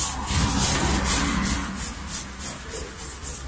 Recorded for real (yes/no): yes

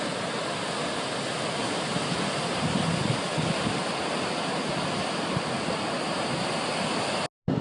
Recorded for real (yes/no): yes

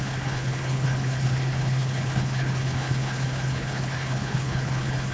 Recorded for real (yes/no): no